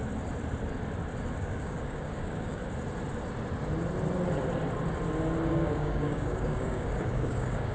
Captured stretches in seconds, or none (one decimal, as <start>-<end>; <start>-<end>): 0.0-1.4; 2.6-5.5